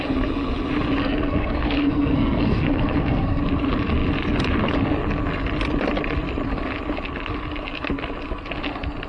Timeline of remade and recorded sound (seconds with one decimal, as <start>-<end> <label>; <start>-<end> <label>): 0.0-1.0 recorded; 1.0-3.4 remade; 3.4-9.1 recorded